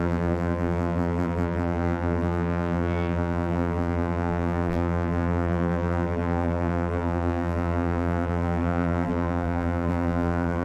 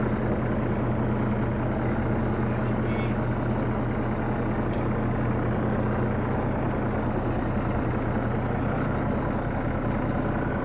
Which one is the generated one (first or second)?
first